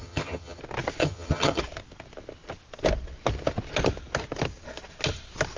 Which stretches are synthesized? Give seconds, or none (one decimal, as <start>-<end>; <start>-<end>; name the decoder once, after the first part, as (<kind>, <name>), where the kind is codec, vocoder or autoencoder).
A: 0.0-0.6 (vocoder, HiFi-GAN); 1.0-1.6